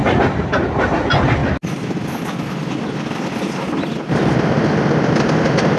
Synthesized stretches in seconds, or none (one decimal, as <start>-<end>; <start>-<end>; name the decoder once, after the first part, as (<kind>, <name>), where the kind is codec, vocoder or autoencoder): none